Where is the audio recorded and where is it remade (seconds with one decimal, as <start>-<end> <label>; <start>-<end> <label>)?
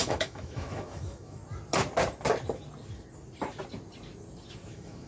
0.0-1.4 remade; 1.4-4.5 recorded; 4.5-5.1 remade